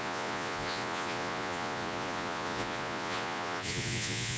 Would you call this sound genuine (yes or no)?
no